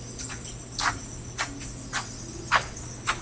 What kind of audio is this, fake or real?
real